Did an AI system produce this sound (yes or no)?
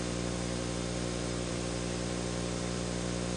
yes